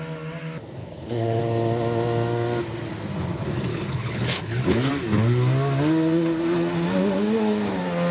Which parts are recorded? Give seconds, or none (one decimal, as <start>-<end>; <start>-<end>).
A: 0.0-0.8; 1.4-3.7; 4.9-8.1